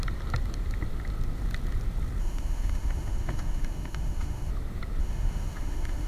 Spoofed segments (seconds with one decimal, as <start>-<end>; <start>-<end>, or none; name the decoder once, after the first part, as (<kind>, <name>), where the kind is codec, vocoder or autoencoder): 2.2-4.5 (autoencoder, DAC-VAE); 5.0-6.1